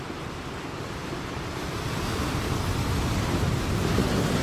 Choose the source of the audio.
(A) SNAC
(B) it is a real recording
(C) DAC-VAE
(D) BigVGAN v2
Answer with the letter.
B